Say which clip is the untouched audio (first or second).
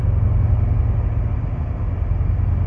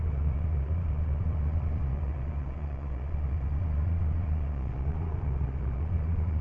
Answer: first